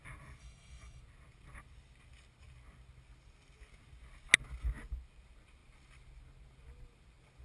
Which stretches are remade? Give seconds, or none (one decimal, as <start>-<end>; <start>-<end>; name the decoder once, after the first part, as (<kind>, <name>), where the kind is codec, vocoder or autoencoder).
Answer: 0.4-1.0 (autoencoder, DAC-VAE)